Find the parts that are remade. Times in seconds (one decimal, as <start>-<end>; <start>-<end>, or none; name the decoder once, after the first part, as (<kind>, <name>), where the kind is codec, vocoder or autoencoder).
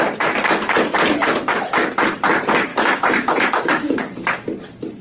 1.3-1.9 (autoencoder, DAC-VAE); 2.7-4.0